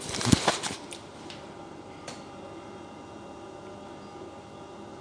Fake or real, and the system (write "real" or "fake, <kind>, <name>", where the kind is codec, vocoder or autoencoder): fake, vocoder, BigVGAN v2